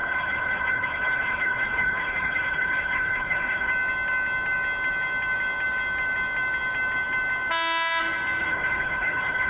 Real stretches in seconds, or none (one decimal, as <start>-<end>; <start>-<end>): 3.7-8.4